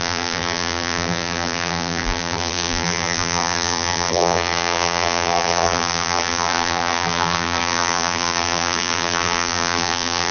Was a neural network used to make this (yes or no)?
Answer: yes